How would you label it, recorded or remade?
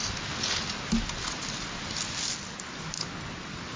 recorded